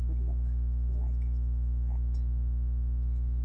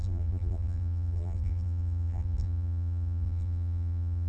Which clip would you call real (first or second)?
first